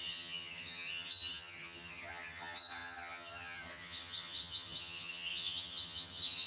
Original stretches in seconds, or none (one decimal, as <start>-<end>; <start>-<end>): none